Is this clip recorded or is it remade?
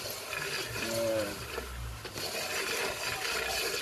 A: recorded